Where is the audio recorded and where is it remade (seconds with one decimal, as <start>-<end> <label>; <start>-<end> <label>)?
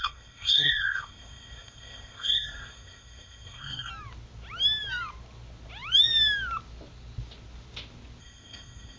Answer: 0.0-3.9 remade; 3.9-8.2 recorded; 8.2-9.0 remade